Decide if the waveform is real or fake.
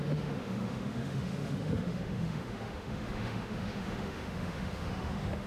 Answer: fake